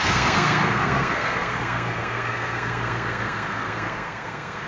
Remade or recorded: remade